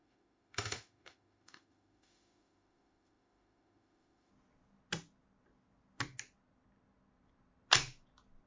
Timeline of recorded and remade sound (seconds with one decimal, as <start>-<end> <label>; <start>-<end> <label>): 0.0-4.3 remade; 4.3-8.5 recorded